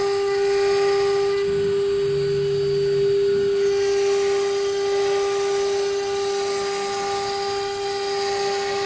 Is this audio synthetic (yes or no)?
no